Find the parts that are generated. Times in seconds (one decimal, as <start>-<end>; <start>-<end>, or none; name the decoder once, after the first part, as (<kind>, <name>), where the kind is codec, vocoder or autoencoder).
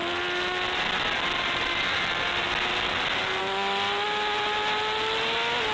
none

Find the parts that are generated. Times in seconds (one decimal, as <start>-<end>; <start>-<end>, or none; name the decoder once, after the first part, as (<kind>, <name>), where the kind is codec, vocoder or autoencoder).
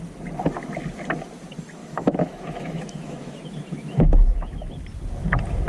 1.8-4.8 (autoencoder, DAC-VAE)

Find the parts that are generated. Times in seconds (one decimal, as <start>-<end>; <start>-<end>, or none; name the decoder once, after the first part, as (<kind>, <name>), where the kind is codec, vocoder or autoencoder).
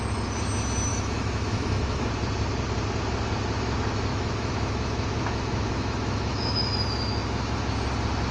0.9-2.1 (autoencoder, DAC-VAE); 4.1-7.6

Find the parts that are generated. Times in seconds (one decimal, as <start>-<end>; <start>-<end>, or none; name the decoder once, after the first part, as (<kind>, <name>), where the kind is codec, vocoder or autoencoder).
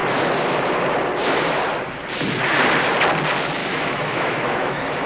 3.6-5.1 (autoencoder, DAC-VAE)